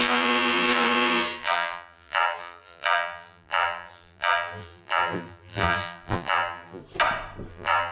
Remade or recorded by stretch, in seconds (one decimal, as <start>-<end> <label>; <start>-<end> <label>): 0.0-6.8 remade; 6.8-7.5 recorded; 7.5-7.9 remade